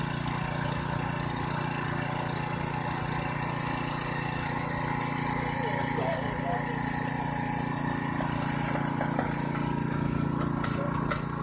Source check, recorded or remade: recorded